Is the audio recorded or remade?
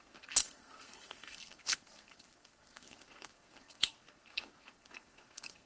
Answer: remade